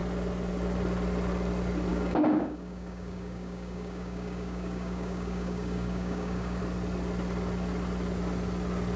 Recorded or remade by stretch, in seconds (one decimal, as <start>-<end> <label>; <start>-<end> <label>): 0.0-1.9 recorded; 1.9-6.6 remade; 6.6-9.0 recorded